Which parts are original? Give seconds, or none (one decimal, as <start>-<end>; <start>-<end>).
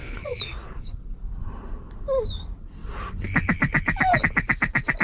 1.2-5.0